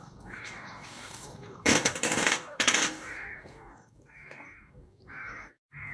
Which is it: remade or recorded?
remade